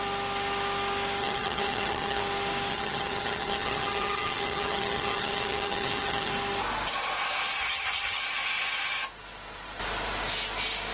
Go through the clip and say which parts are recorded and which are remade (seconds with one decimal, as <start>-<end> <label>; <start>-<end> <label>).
0.0-1.2 recorded; 1.2-2.2 remade; 2.2-2.7 recorded; 2.7-6.3 remade; 6.3-7.6 recorded; 7.6-8.2 remade; 8.2-10.9 recorded